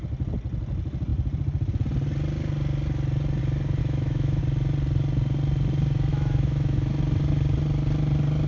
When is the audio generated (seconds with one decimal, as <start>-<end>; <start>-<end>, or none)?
3.8-4.4; 6.1-6.9